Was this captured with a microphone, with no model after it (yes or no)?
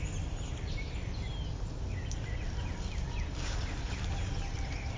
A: yes